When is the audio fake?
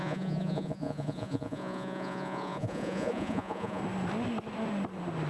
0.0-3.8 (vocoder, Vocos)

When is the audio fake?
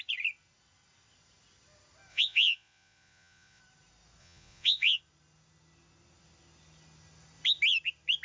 2.1-3.6 (vocoder, Vocos); 4.2-5.0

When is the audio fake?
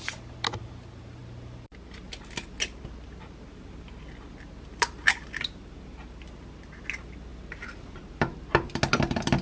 none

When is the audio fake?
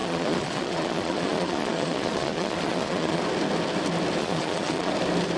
0.0-3.2 (vocoder, Vocos); 4.2-4.9